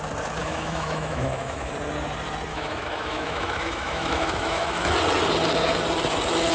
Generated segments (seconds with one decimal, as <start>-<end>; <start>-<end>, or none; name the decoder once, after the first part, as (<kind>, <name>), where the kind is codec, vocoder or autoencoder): 0.4-1.7 (autoencoder, DAC-VAE); 2.5-4.9